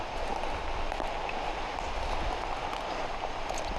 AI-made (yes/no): no